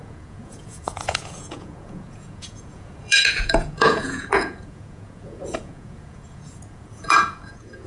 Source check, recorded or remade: remade